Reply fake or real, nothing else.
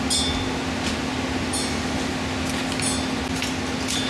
real